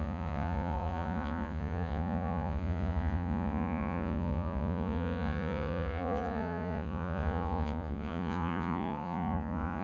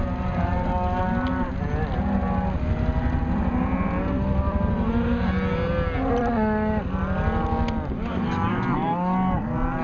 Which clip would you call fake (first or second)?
first